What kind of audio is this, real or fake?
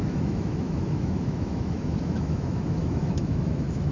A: fake